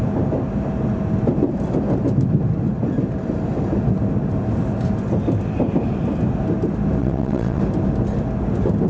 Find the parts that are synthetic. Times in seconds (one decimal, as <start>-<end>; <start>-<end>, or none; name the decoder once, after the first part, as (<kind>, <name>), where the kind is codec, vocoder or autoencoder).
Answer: 7.0-7.6 (vocoder, WaveNeXt)